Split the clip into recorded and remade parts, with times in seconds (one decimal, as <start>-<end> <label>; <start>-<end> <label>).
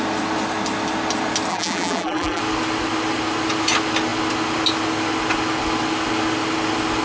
0.0-1.5 recorded; 1.5-2.4 remade; 2.4-7.0 recorded